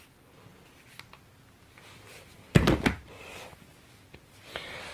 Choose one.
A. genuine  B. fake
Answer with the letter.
A